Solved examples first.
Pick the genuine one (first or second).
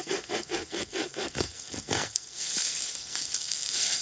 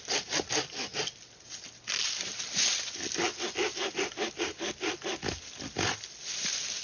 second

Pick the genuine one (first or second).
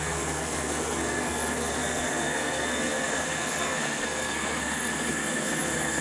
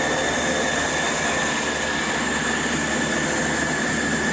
second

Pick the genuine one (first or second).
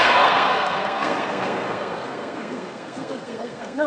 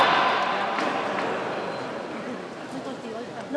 second